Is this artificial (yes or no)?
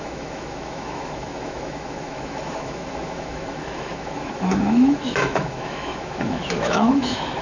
yes